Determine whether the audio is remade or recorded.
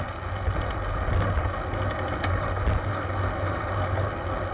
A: recorded